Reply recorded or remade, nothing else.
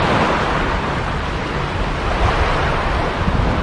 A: recorded